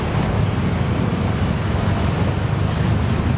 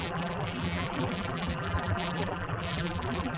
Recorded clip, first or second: first